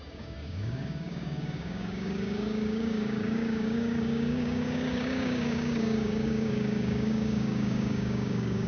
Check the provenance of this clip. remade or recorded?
remade